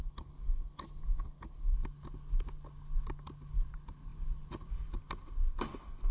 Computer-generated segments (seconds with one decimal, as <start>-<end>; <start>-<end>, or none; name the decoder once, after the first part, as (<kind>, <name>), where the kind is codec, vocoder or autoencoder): none